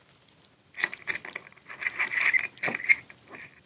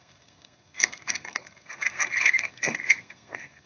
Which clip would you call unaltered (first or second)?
first